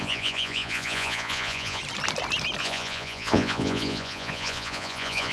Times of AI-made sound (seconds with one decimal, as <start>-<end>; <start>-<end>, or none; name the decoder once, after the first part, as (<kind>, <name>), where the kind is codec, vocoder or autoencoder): 0.0-1.8 (vocoder, Vocos); 2.6-5.3